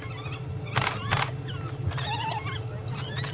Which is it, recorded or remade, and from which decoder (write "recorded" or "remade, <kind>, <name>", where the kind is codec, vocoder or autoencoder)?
recorded